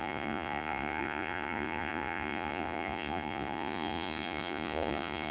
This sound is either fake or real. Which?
fake